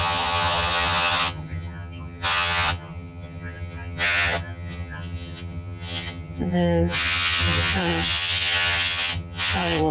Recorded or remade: remade